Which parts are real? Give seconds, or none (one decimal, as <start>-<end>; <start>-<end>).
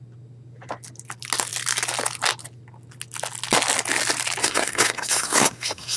0.0-4.4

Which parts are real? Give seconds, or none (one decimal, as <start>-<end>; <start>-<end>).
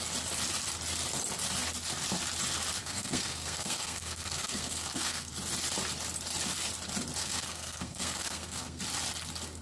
0.0-2.8; 5.3-7.2; 8.8-9.6